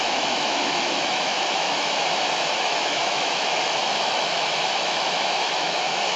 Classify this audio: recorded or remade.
remade